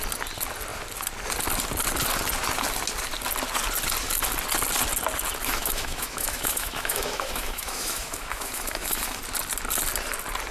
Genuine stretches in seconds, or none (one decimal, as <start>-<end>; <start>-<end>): 0.0-5.4; 9.2-10.5